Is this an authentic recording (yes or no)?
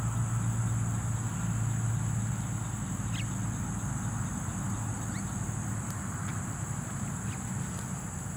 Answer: yes